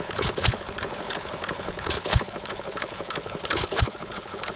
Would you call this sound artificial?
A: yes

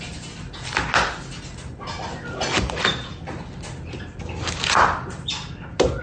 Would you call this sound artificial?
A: no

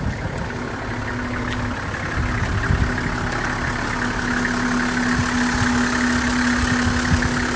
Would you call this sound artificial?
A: no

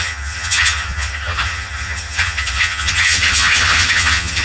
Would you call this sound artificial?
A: yes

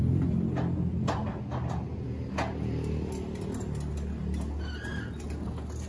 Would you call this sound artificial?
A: no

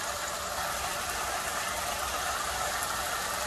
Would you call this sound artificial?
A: no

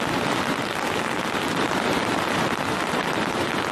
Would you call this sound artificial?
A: no